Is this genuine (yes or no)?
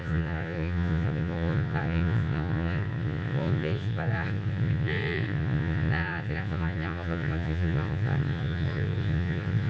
no